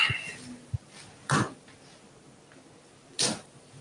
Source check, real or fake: real